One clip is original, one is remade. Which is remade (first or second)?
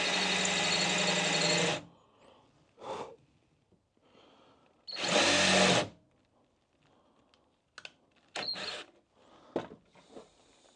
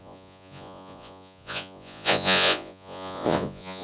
second